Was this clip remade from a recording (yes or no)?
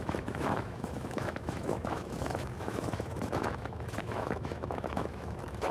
yes